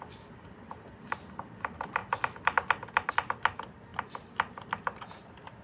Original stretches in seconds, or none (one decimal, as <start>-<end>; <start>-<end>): 0.0-5.6